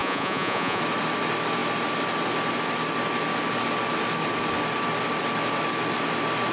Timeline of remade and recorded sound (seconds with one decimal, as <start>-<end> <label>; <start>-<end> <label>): 0.0-0.8 remade; 0.8-6.5 recorded